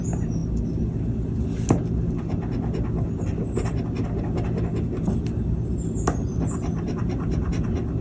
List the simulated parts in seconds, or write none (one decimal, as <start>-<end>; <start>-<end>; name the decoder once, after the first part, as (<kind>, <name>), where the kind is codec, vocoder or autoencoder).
6.7-7.5 (vocoder, BigVGAN v2)